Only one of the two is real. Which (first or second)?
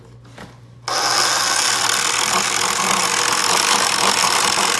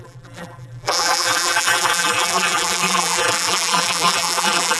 first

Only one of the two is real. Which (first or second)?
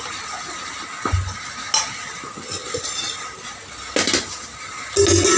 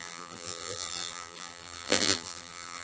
first